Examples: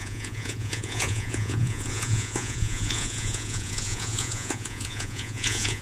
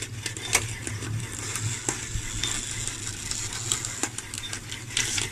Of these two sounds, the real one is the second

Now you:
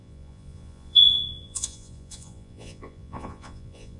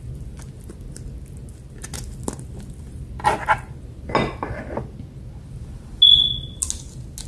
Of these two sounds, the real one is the second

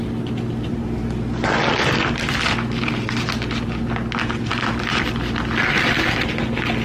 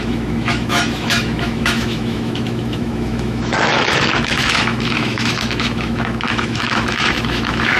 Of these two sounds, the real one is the first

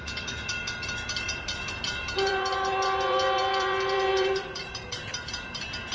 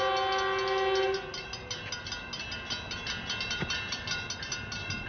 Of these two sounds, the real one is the second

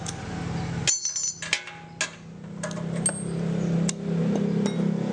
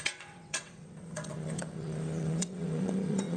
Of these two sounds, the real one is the first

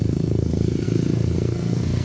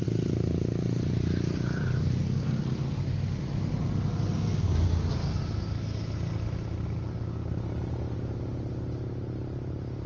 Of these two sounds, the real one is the second